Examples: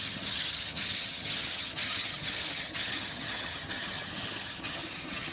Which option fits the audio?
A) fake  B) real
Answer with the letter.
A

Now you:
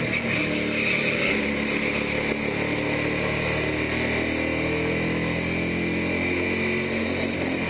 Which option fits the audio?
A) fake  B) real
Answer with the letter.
B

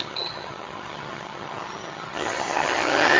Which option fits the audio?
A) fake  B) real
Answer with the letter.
A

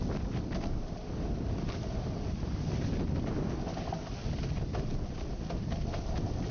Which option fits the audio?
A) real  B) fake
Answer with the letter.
A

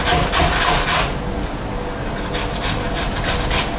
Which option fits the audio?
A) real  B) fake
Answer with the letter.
A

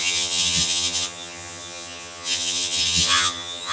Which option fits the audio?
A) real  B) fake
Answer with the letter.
B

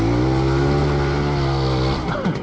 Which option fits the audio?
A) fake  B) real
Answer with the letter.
B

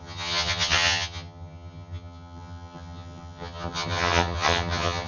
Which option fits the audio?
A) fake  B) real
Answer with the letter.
A